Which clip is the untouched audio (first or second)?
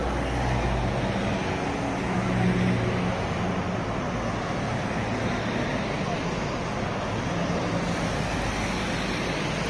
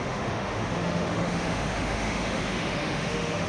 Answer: first